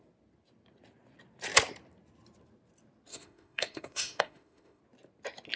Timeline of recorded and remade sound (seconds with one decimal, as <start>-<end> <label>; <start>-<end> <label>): 0.0-3.1 recorded; 3.1-4.8 remade; 4.8-5.6 recorded